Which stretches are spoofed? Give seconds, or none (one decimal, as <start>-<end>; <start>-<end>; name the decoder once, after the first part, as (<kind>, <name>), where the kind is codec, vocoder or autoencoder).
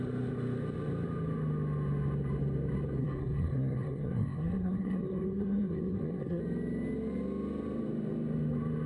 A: 3.0-6.4 (codec, SNAC)